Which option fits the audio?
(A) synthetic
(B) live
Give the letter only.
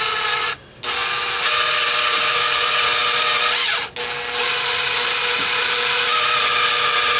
B